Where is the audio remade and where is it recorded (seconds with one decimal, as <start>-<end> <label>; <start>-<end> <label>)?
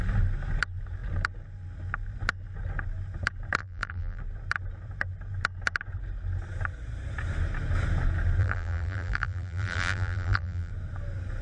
0.0-3.6 recorded; 3.6-4.2 remade; 4.2-8.4 recorded; 8.4-10.7 remade; 10.7-11.4 recorded